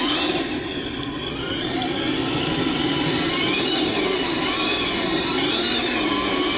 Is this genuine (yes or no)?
yes